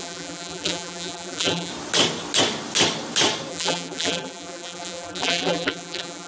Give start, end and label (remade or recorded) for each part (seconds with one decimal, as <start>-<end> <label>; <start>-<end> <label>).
0.0-1.7 remade; 1.7-3.5 recorded; 3.5-6.3 remade